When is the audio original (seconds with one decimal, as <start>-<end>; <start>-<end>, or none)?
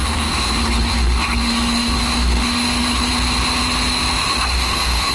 3.1-4.2